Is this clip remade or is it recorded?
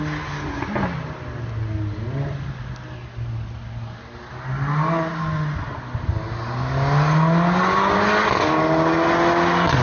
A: recorded